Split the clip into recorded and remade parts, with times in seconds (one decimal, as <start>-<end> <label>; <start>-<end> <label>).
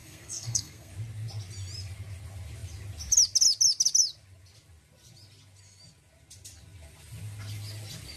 0.0-0.9 remade; 0.9-8.2 recorded